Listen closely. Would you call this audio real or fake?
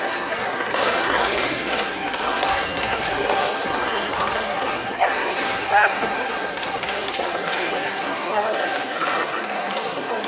fake